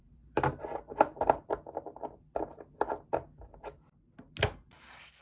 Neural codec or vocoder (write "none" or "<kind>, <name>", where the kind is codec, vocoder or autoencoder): none